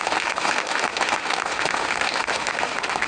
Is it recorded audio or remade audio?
remade